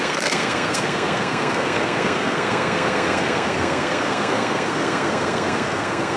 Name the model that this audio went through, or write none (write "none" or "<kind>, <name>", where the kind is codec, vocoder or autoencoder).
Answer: codec, SNAC